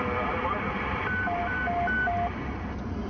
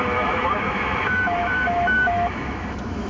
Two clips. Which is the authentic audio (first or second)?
first